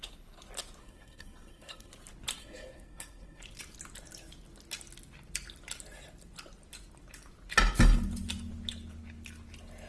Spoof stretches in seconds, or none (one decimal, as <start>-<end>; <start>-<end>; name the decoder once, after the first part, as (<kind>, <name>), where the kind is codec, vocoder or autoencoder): 0.8-1.9 (codec, SNAC); 2.4-3.4